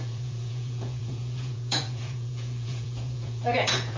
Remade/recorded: remade